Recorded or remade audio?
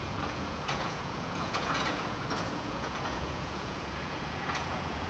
remade